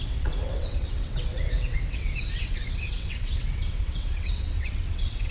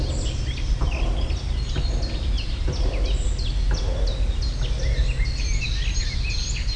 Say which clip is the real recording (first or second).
second